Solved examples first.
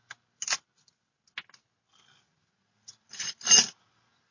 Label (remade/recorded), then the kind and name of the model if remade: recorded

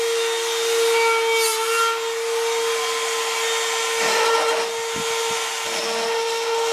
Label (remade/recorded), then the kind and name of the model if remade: recorded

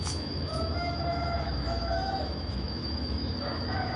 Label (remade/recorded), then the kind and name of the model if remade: remade, autoencoder, DAC-VAE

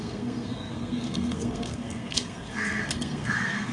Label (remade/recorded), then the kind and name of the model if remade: remade, codec, SNAC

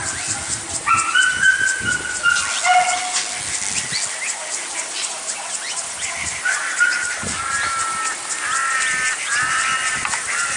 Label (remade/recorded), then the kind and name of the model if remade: recorded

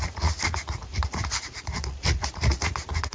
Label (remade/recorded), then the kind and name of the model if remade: remade, vocoder, Vocos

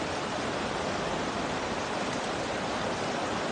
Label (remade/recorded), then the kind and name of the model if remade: recorded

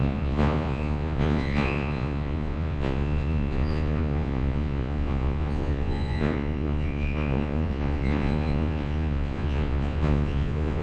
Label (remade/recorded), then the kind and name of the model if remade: remade, vocoder, Vocos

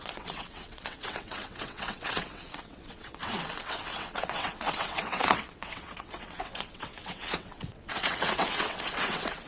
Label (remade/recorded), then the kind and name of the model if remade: remade, vocoder, WaveNeXt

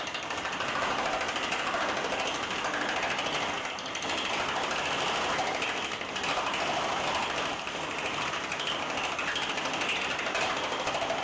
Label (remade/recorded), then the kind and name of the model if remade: recorded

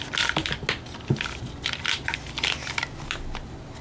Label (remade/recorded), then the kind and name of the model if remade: recorded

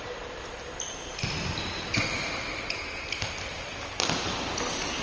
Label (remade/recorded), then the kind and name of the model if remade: recorded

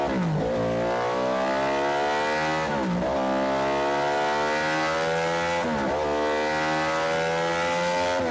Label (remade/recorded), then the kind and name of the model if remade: recorded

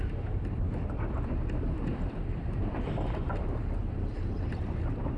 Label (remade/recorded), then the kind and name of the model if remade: remade, vocoder, BigVGAN v2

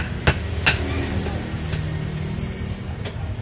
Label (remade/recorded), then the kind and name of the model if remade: recorded